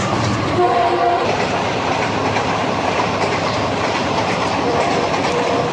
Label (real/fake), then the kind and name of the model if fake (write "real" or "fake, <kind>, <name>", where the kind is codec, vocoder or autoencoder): fake, vocoder, BigVGAN v2